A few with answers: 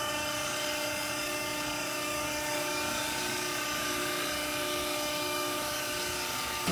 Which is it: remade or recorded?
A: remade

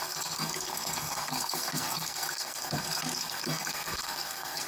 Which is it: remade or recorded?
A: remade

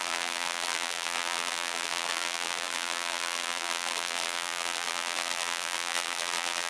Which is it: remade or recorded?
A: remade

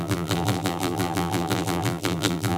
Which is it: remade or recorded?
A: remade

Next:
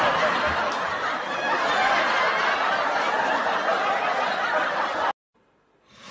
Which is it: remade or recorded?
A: recorded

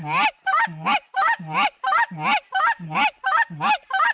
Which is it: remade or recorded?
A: recorded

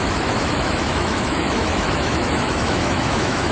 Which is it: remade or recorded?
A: remade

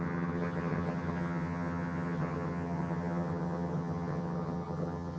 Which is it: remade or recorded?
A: remade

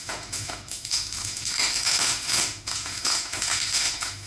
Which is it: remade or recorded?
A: remade